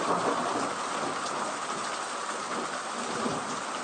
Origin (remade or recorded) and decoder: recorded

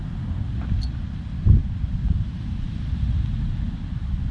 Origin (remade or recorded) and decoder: recorded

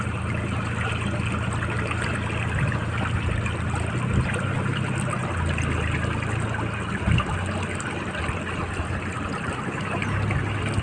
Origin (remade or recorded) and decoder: recorded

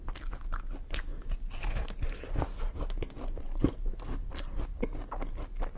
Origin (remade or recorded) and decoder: recorded